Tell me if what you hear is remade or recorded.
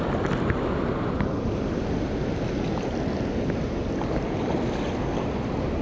recorded